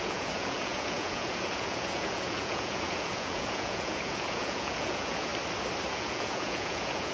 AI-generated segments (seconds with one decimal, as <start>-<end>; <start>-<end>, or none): 0.0-5.3; 5.9-7.1